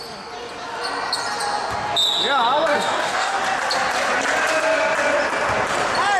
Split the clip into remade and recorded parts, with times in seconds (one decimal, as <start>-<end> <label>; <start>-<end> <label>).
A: 0.0-2.7 recorded; 2.7-3.4 remade; 3.4-6.2 recorded